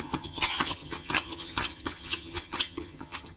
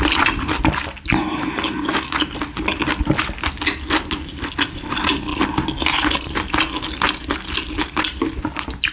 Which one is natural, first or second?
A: second